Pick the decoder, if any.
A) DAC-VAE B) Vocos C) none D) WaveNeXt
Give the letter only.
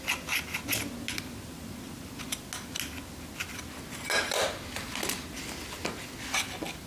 C